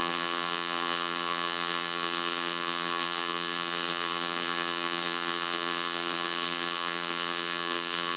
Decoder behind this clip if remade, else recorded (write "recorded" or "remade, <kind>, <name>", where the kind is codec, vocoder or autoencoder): remade, vocoder, BigVGAN v2